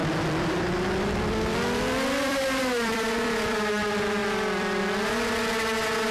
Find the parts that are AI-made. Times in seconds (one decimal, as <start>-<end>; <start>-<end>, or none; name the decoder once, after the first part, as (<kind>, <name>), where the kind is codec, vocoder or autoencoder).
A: 0.0-3.7 (vocoder, BigVGAN v2); 4.2-4.8